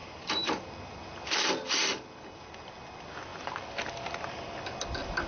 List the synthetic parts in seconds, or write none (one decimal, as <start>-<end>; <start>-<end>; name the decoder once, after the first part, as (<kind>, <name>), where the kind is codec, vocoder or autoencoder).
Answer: 0.0-0.7 (vocoder, BigVGAN v2)